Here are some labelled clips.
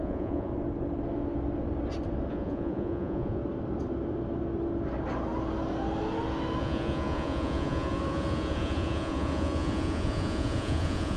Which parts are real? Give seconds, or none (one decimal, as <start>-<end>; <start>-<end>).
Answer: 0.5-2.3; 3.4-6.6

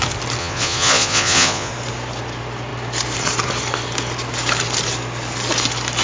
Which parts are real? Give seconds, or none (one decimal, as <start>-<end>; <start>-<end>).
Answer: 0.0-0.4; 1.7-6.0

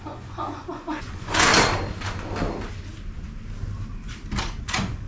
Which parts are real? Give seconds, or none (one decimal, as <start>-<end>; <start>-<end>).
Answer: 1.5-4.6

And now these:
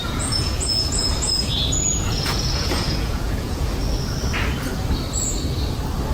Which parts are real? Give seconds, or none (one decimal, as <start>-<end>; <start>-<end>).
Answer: 3.7-6.1

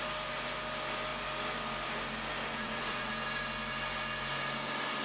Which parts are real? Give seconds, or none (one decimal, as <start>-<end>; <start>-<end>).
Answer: 0.0-2.5; 3.1-5.0

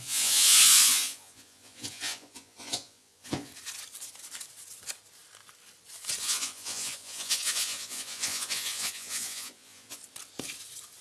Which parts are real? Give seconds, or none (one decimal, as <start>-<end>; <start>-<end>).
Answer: 3.5-6.2; 10.0-11.0

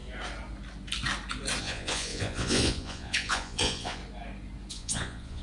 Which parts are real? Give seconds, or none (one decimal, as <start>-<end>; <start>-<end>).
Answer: 0.0-1.6; 4.0-4.7